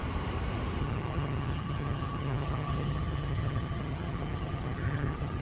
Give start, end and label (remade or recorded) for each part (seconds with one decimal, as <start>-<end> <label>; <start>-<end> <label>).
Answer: 0.0-0.8 recorded; 0.8-5.4 remade